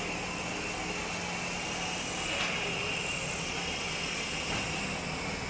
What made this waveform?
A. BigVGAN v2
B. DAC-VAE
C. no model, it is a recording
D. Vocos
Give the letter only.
C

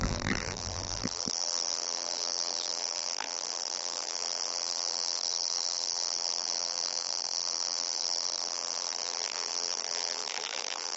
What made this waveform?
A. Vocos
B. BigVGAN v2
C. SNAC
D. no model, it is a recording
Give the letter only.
B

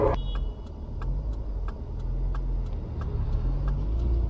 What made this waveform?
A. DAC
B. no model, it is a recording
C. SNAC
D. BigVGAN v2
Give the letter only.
B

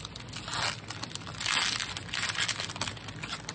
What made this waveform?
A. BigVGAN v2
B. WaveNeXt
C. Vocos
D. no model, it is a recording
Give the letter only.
D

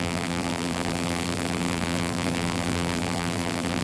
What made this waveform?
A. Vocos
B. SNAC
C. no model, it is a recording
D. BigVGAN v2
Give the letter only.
D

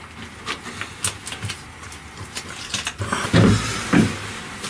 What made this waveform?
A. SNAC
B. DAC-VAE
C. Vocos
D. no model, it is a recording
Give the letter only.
D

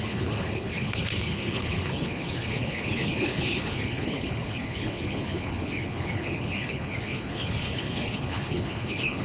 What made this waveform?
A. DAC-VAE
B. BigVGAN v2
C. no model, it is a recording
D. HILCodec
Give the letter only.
D